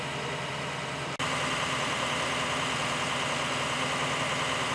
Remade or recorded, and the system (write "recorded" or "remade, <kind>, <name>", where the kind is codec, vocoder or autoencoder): recorded